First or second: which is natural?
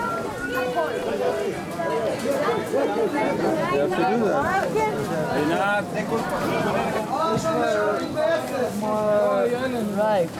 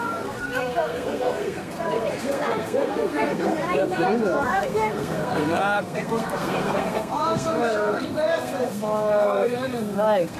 first